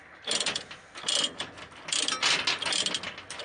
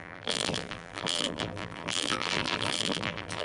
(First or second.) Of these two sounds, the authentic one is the first